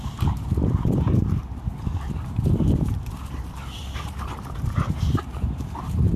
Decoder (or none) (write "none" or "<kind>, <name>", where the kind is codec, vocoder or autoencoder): vocoder, BigVGAN v2